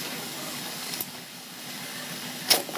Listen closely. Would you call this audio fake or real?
fake